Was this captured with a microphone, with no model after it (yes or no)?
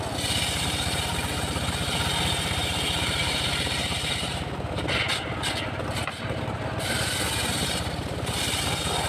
yes